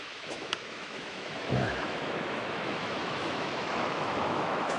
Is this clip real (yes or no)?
no